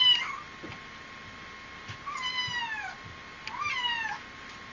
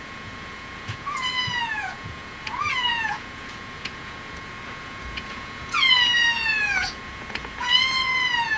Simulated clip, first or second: second